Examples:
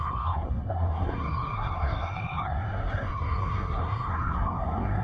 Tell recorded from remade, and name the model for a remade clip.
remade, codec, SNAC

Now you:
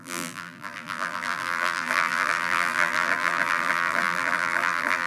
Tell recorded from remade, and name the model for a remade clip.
remade, vocoder, BigVGAN v2